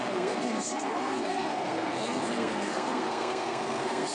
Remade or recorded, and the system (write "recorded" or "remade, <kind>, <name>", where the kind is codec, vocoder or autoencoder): remade, codec, SNAC